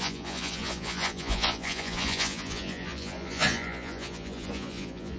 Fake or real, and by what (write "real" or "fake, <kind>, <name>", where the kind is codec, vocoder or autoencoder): fake, vocoder, Vocos